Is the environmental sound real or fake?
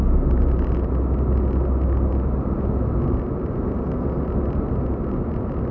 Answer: real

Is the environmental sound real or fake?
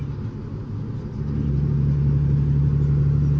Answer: real